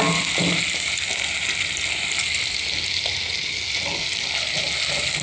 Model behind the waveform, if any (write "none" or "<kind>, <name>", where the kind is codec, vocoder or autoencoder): none